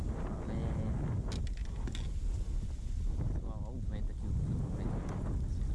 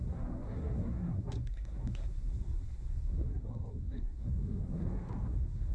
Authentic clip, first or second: first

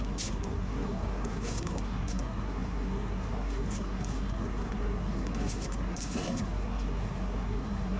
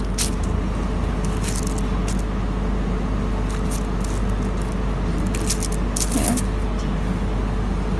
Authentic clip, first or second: second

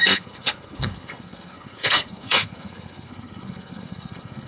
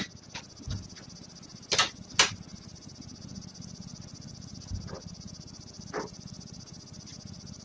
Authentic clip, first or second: second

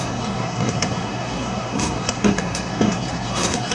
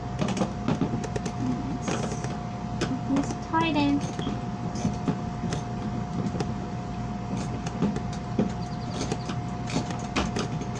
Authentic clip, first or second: second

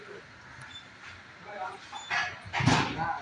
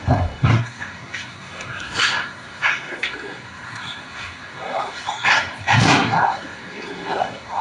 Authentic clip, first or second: first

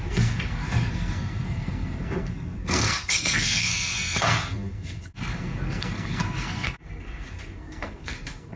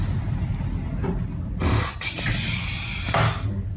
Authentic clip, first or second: second